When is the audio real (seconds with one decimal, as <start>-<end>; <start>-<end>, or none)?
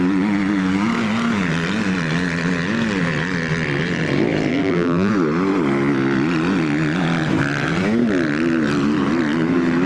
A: 0.0-4.5; 5.1-9.9